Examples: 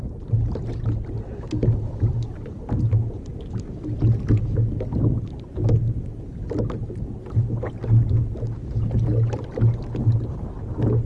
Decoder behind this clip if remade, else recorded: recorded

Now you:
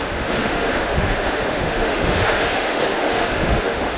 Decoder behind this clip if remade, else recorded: remade, autoencoder, DAC-VAE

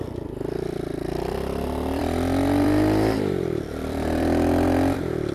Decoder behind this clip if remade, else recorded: remade, vocoder, BigVGAN v2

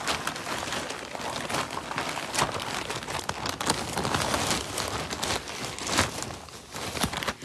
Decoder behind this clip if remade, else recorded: recorded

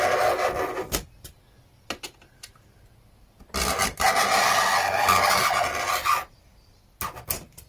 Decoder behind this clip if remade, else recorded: recorded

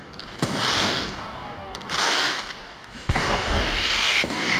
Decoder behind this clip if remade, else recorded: remade, codec, DAC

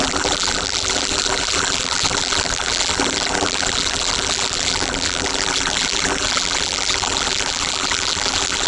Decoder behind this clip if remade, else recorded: remade, vocoder, BigVGAN v2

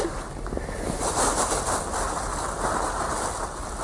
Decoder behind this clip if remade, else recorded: recorded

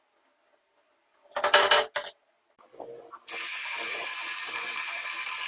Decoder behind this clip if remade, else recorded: recorded